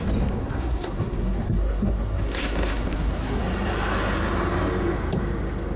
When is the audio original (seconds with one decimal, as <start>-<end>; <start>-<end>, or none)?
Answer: 0.0-0.4; 3.4-5.8